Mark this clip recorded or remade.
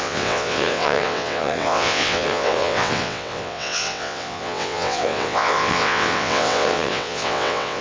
remade